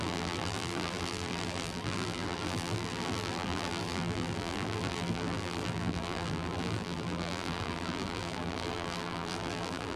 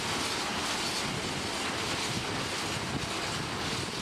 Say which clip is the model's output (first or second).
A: first